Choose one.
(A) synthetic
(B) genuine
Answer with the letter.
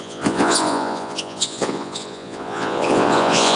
A